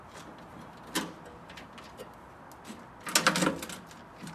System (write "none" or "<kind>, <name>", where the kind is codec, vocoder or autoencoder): none